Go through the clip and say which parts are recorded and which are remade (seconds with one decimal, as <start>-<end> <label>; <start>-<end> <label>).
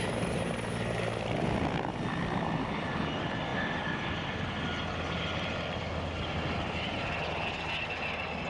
0.0-8.5 recorded